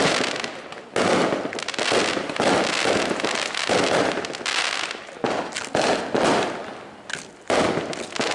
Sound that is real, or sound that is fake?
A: real